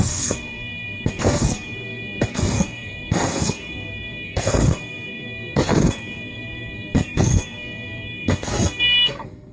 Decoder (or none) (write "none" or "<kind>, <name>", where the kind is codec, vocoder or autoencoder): codec, SNAC